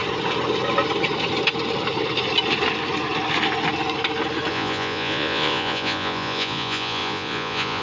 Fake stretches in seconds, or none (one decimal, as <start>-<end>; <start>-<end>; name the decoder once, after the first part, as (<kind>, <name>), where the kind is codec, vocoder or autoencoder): 4.5-7.8 (vocoder, Vocos)